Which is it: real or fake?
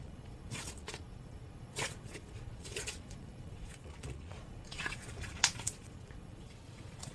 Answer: fake